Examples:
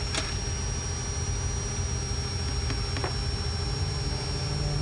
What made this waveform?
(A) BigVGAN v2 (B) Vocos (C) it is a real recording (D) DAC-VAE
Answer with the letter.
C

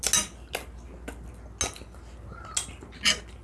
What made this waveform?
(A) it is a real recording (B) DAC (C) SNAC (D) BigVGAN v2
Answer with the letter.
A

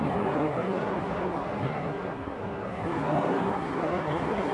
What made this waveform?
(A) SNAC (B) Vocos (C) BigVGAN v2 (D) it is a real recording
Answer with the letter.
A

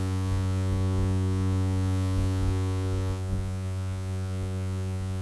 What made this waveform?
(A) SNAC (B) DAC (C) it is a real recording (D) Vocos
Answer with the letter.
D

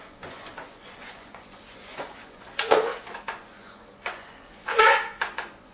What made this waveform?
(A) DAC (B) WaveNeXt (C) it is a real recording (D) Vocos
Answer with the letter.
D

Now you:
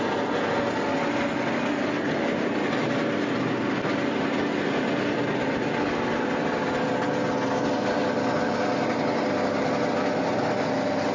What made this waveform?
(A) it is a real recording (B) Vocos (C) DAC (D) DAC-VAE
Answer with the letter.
A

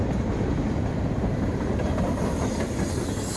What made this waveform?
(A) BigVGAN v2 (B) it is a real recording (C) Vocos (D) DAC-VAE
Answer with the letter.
B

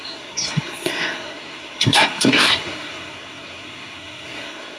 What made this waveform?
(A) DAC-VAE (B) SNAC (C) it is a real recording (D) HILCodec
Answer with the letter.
B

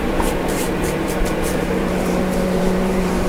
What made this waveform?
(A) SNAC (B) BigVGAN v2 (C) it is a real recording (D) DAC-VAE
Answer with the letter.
B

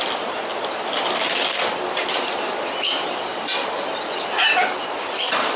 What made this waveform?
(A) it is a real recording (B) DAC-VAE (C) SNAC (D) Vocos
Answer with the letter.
A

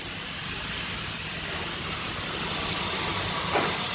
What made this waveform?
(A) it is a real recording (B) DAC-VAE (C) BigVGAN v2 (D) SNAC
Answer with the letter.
A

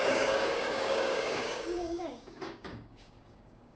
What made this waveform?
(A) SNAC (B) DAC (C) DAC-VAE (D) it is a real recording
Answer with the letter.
B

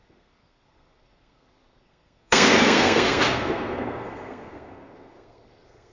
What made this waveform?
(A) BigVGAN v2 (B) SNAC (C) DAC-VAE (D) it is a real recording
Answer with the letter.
B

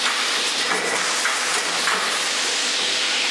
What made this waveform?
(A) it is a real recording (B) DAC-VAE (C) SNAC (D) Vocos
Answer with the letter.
A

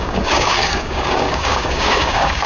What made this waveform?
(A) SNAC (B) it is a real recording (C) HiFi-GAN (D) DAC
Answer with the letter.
D